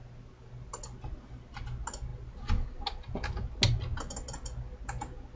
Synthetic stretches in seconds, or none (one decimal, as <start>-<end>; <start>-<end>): none